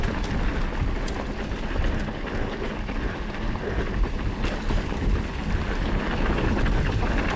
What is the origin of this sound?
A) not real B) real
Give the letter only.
B